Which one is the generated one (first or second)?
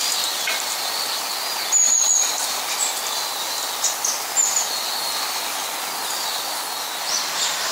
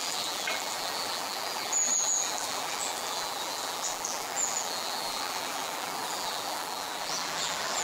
second